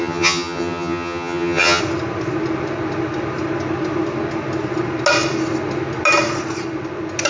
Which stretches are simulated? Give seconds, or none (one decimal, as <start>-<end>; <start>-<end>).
0.0-1.8

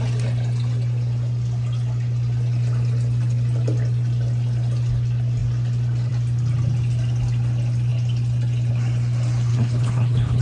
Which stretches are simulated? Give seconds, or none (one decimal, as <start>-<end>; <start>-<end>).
9.5-10.4

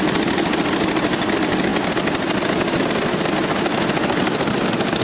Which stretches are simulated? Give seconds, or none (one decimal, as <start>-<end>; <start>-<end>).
none

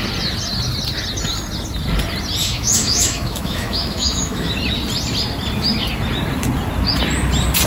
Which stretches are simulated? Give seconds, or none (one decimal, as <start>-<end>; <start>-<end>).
2.4-4.5

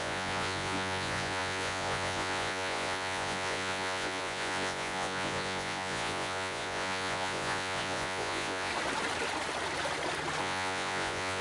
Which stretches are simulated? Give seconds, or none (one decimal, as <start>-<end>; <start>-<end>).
0.0-8.7; 10.4-11.4

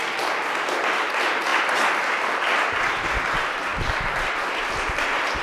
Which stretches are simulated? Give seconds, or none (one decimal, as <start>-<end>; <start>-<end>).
none

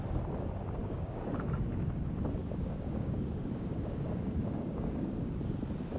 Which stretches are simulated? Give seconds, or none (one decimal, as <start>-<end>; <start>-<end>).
0.8-1.7; 2.4-5.4